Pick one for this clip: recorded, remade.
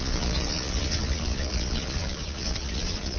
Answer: remade